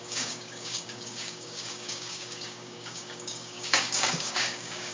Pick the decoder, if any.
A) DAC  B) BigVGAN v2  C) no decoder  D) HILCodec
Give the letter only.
A